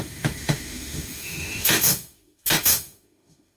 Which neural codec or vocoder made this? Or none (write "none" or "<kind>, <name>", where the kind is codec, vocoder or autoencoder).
autoencoder, DAC-VAE